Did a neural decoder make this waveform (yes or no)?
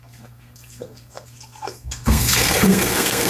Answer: yes